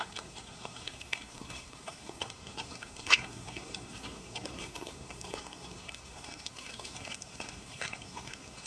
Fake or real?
fake